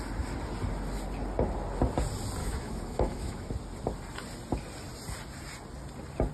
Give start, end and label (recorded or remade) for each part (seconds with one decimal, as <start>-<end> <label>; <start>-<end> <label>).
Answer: 0.0-2.4 recorded; 2.4-3.5 remade; 3.5-6.3 recorded